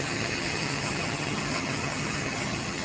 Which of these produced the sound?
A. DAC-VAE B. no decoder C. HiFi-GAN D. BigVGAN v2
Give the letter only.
C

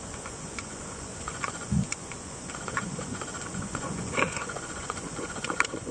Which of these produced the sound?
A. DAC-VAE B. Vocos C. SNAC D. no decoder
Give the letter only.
B